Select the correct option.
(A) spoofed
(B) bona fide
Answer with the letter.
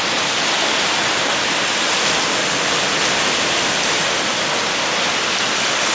B